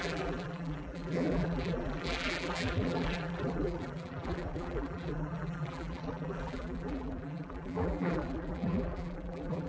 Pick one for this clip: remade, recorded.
remade